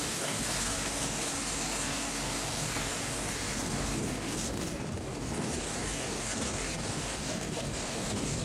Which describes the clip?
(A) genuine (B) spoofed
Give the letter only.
B